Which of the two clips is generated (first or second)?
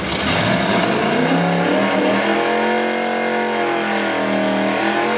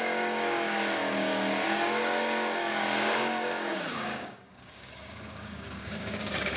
second